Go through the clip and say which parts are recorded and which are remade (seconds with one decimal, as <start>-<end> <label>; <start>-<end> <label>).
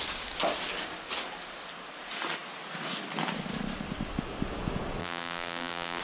0.0-5.0 recorded; 5.0-6.0 remade